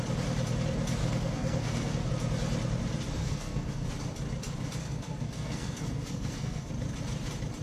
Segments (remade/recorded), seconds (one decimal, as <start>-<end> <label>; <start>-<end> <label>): 0.0-1.0 recorded; 1.0-2.1 remade; 2.1-3.2 recorded; 3.2-3.9 remade; 3.9-4.8 recorded; 4.8-6.7 remade; 6.7-7.6 recorded